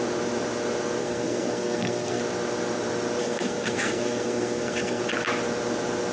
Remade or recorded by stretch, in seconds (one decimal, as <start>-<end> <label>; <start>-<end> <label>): 0.0-1.0 recorded; 1.0-2.2 remade; 2.2-3.2 recorded; 3.2-5.0 remade; 5.0-6.1 recorded